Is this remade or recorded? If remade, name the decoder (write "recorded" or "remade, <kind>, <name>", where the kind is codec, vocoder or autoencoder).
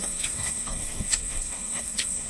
remade, codec, SNAC